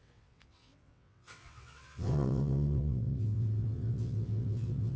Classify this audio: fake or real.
fake